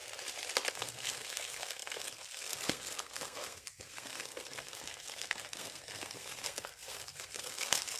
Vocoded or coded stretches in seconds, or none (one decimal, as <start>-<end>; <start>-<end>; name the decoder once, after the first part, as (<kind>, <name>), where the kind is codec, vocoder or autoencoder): 0.7-8.0 (codec, SNAC)